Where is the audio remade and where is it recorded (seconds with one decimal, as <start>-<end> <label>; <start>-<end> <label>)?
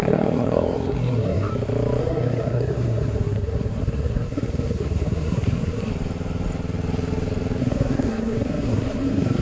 0.0-1.5 remade; 1.5-2.0 recorded; 2.0-5.9 remade; 5.9-7.6 recorded; 7.6-9.4 remade